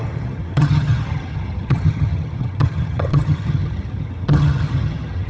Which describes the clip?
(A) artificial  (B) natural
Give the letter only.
A